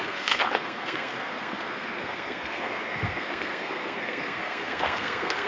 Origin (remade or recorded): remade